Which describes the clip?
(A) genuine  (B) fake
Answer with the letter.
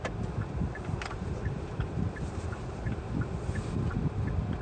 A